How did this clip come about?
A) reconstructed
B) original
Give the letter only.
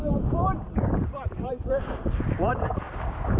A